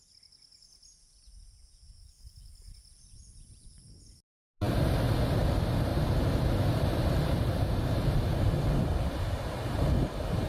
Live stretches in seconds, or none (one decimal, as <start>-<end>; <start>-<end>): 0.0-5.9; 8.4-10.5